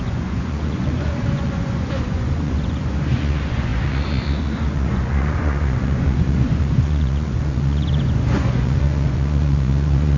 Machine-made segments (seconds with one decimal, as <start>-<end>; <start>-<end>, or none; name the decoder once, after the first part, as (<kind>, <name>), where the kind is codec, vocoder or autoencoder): 0.0-10.2 (vocoder, Vocos)

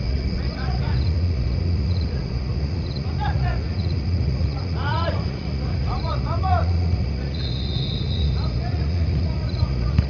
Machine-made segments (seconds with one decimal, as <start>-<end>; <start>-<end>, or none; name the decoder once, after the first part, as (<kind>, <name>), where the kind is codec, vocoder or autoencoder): 0.0-10.1 (vocoder, Vocos)

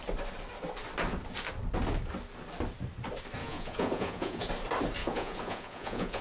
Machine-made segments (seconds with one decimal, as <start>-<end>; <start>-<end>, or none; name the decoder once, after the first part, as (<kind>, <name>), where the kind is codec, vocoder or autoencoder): 3.4-4.5 (vocoder, Vocos); 5.0-6.2

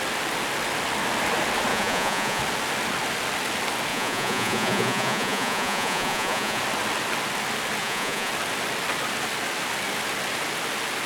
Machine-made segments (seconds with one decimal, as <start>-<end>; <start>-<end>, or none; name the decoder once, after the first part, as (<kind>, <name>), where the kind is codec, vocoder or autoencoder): 1.7-2.4 (vocoder, Vocos); 3.9-6.6; 7.8-8.3